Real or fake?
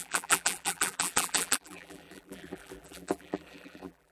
fake